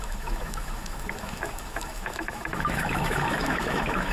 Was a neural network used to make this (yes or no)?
yes